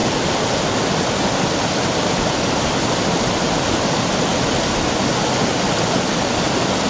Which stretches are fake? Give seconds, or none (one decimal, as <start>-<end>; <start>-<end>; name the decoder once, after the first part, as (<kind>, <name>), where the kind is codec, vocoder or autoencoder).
none

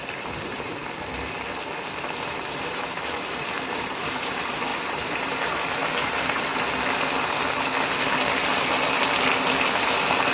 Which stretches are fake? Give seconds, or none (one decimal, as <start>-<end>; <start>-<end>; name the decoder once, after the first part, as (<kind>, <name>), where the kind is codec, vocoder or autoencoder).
0.0-0.8 (vocoder, BigVGAN v2); 2.6-6.5

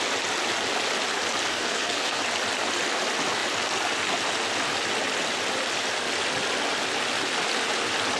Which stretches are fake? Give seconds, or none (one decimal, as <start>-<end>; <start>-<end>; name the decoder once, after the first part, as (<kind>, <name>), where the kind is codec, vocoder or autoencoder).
1.5-2.2 (codec, SNAC)

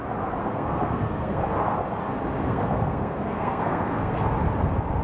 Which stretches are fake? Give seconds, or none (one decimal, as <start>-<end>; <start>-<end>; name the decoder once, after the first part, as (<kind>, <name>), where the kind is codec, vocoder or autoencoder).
0.4-1.4 (codec, SNAC); 2.4-4.3

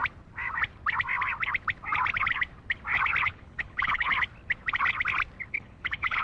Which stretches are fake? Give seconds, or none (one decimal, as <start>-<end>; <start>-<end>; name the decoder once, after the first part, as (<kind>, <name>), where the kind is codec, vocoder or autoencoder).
3.2-4.1 (codec, HILCodec); 5.5-6.2